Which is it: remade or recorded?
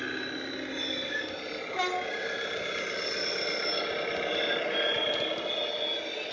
recorded